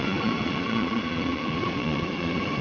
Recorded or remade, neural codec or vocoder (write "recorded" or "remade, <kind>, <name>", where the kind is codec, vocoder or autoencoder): remade, vocoder, Vocos